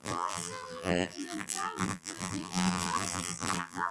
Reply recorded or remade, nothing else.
remade